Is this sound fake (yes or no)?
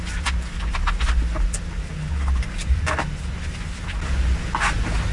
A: no